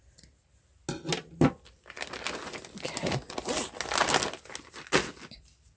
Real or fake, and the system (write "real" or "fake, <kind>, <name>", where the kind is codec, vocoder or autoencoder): real